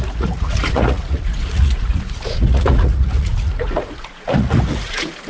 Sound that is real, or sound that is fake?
fake